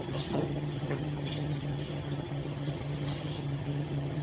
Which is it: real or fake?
fake